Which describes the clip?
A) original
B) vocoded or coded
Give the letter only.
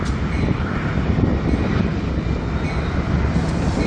A